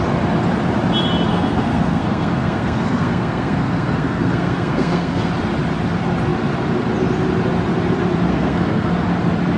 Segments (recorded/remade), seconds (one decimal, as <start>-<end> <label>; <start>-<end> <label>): 0.0-1.3 recorded; 1.3-5.3 remade; 5.3-8.3 recorded; 8.3-8.9 remade; 8.9-9.6 recorded